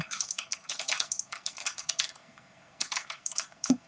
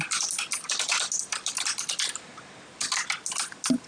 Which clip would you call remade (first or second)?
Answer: first